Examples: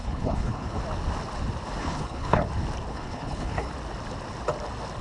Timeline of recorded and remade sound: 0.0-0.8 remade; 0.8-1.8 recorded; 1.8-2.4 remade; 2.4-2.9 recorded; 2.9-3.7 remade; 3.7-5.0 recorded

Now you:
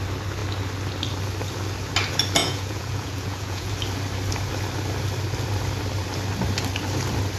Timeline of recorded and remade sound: 0.0-2.4 recorded; 2.4-3.7 remade; 3.7-7.4 recorded

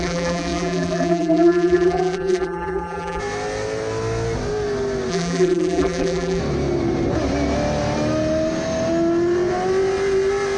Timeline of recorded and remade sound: 0.0-3.2 remade; 3.2-5.1 recorded; 5.1-6.4 remade; 6.4-10.6 recorded

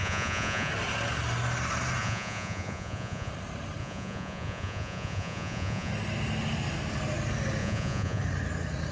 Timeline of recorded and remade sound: 0.0-0.7 remade; 0.7-2.0 recorded; 2.0-3.3 remade; 3.3-3.8 recorded; 3.8-5.9 remade; 5.9-7.6 recorded; 7.6-8.2 remade; 8.2-8.9 recorded